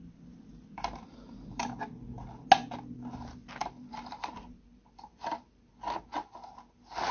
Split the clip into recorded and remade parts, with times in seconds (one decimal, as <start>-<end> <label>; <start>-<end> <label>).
0.0-0.5 recorded; 0.5-1.6 remade; 1.6-3.6 recorded; 3.6-5.7 remade; 5.7-7.1 recorded